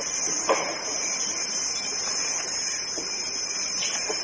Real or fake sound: real